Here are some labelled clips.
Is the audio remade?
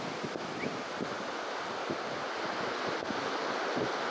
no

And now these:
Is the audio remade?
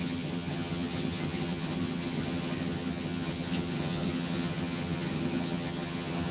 yes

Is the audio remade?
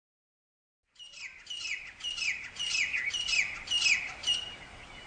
no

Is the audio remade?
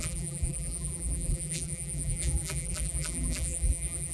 yes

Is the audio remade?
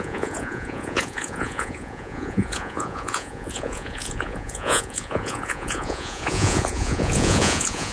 yes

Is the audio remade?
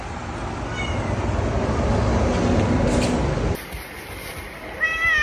no